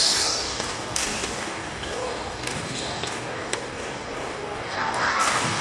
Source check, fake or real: fake